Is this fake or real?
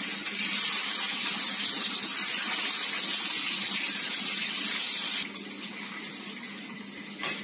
real